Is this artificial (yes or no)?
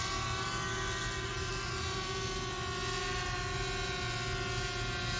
no